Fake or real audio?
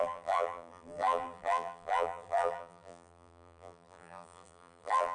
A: fake